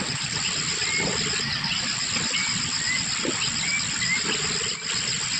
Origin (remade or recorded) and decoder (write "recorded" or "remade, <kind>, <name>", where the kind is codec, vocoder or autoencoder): recorded